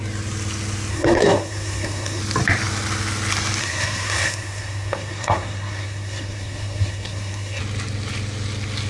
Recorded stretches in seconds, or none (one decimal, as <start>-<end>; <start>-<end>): 0.0-0.9; 2.2-3.6; 7.6-8.9